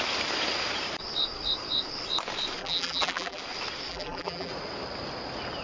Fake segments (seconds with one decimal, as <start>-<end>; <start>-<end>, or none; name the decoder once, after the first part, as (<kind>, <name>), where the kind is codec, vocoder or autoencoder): 2.6-3.4 (vocoder, BigVGAN v2); 3.9-4.5